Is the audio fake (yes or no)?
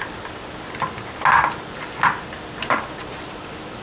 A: no